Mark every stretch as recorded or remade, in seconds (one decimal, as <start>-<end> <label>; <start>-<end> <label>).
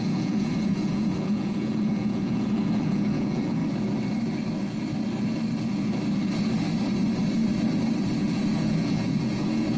0.0-3.6 remade; 3.6-8.2 recorded; 8.2-9.8 remade